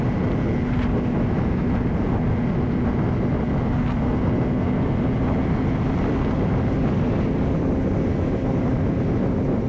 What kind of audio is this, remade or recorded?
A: recorded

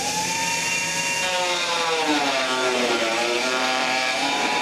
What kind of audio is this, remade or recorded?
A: remade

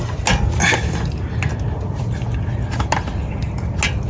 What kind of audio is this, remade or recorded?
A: recorded